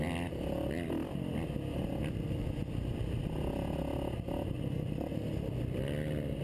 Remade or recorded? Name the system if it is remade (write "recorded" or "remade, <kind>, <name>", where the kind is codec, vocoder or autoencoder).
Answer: recorded